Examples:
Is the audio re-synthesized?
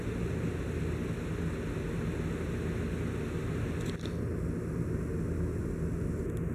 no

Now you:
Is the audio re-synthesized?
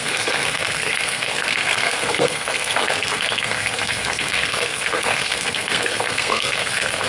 yes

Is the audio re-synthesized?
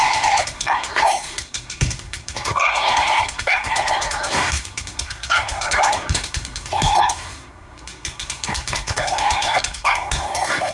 yes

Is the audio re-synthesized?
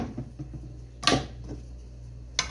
no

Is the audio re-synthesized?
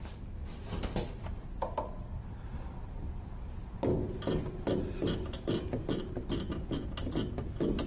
no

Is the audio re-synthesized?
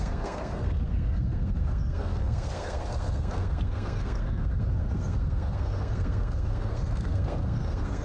yes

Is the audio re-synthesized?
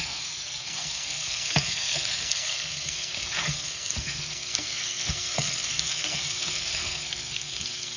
yes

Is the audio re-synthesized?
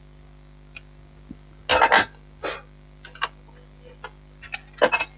no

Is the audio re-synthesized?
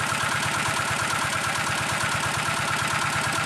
no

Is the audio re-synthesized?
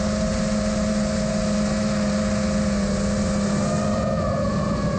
no